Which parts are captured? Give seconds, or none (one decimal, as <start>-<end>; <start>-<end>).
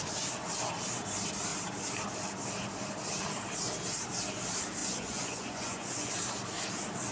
0.0-4.8; 6.1-7.1